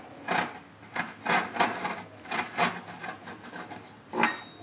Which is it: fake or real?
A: real